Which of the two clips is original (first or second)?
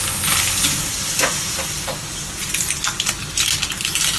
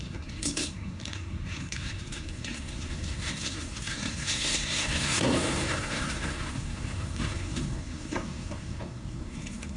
first